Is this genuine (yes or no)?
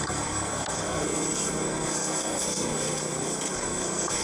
no